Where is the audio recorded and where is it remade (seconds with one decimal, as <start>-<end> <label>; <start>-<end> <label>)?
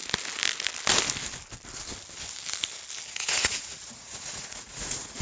0.0-3.1 recorded; 3.1-5.2 remade